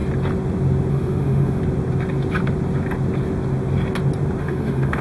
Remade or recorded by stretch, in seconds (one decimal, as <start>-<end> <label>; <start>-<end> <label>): 0.0-0.9 recorded; 0.9-1.6 remade; 1.6-4.4 recorded; 4.4-5.0 remade